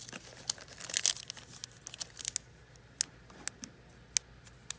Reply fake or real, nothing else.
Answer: real